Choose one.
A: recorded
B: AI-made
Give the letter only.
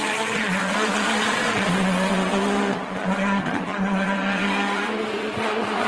B